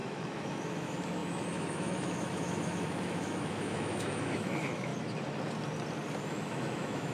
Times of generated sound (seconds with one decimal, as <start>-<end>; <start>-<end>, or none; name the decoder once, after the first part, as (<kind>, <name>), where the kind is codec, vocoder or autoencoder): 0.0-4.9 (autoencoder, DAC-VAE); 6.2-7.1